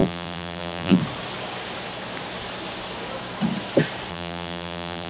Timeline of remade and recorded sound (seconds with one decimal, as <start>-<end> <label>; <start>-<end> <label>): 0.0-1.0 remade; 1.0-4.1 recorded; 4.1-5.1 remade